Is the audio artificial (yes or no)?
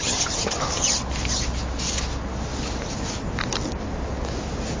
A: no